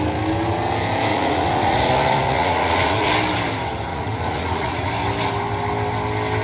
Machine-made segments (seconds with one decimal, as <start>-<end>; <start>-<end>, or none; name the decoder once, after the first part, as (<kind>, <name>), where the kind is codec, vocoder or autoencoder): 1.1-3.1 (vocoder, Vocos); 3.9-4.9